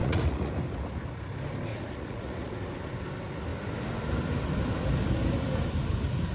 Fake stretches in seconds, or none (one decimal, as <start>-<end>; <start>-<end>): 0.0-0.5; 1.7-2.7